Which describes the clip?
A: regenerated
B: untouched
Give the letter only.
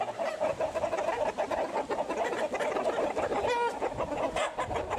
B